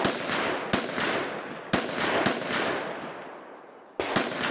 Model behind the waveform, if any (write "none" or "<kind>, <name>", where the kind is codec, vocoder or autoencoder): none